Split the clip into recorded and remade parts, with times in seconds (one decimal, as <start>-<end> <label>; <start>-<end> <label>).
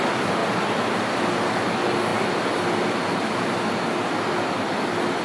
0.0-5.2 recorded